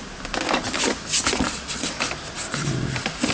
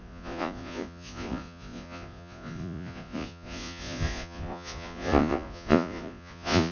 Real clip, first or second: first